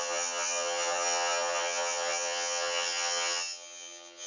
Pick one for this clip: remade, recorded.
remade